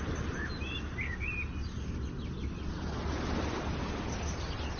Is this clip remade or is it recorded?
recorded